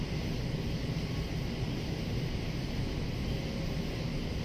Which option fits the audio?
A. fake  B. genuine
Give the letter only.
B